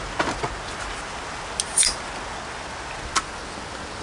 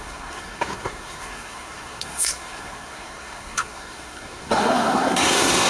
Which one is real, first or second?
first